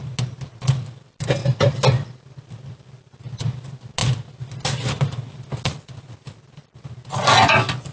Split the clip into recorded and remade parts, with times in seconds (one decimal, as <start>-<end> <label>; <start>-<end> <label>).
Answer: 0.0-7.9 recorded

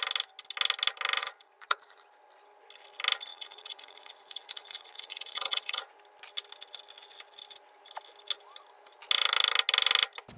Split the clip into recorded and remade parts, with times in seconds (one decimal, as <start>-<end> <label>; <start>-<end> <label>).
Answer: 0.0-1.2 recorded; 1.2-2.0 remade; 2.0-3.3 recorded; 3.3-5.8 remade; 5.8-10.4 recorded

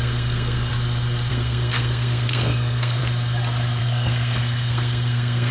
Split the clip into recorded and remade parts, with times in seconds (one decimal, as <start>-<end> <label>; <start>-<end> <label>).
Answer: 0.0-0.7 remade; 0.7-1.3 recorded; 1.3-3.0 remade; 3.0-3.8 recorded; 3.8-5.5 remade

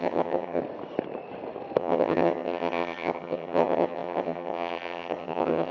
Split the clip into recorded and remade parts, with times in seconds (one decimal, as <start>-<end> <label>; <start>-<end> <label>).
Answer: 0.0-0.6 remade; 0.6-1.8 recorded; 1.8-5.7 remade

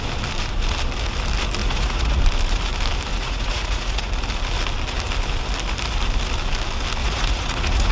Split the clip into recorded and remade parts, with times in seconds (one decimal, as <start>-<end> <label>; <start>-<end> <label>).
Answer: 0.0-1.6 recorded; 1.6-2.2 remade; 2.2-3.1 recorded; 3.1-4.1 remade; 4.1-7.0 recorded; 7.0-7.9 remade

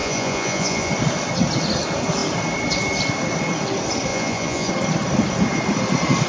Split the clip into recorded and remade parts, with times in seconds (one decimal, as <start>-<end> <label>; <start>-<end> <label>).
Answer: 0.0-0.9 remade; 0.9-4.1 recorded; 4.1-4.7 remade; 4.7-6.3 recorded